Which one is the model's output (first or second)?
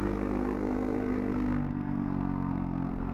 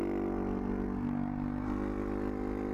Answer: first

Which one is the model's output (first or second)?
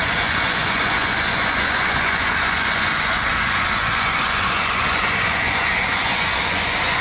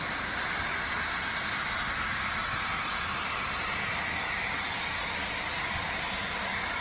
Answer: first